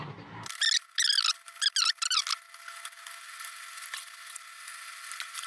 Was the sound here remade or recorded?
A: recorded